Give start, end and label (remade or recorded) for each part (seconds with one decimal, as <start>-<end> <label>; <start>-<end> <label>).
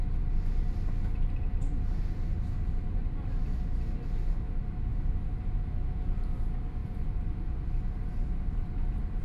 0.0-4.9 recorded; 4.9-5.6 remade; 5.6-6.8 recorded; 6.8-8.1 remade; 8.1-9.2 recorded